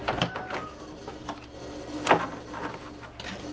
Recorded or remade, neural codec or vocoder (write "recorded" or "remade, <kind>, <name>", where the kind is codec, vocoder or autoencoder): recorded